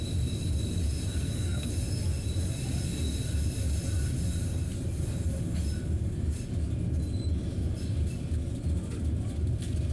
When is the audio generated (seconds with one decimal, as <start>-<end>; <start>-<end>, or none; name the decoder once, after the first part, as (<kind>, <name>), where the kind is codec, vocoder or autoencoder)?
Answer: 1.1-1.7 (codec, SNAC)